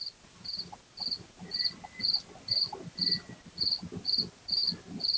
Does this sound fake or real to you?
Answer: real